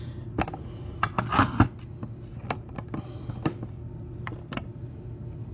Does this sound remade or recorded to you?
recorded